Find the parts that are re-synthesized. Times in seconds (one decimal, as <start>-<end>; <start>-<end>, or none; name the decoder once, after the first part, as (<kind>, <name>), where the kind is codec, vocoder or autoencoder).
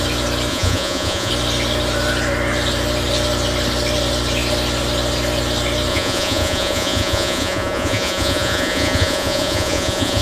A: 0.5-1.3 (vocoder, Vocos); 5.9-10.2